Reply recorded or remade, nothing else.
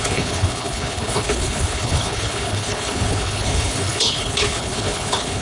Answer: remade